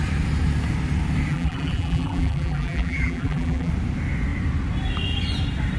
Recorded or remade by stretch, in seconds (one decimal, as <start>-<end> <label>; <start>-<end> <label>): 0.0-1.3 recorded; 1.3-3.7 remade; 3.7-5.8 recorded